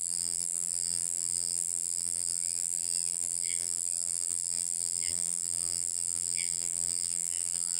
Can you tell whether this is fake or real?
fake